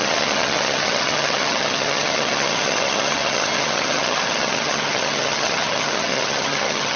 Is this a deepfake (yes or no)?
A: yes